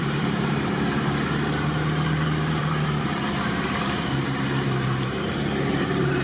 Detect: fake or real fake